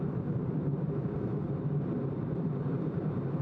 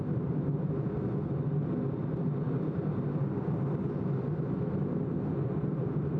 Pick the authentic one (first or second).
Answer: second